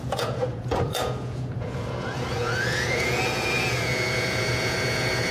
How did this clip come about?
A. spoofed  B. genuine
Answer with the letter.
A